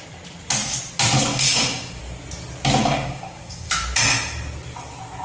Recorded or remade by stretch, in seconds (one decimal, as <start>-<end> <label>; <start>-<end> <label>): 0.0-1.3 recorded; 1.3-2.0 remade; 2.0-2.8 recorded; 2.8-3.7 remade; 3.7-5.2 recorded